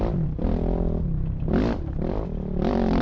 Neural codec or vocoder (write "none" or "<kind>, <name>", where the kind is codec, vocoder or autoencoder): none